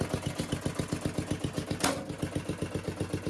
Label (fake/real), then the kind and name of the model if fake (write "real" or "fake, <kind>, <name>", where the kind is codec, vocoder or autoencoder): real